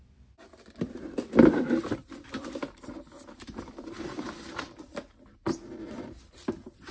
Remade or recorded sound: recorded